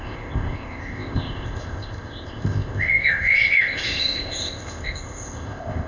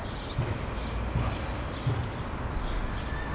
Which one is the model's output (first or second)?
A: first